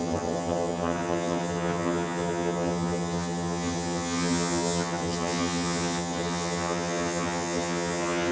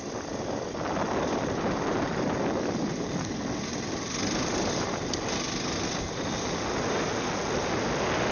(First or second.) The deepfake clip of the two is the first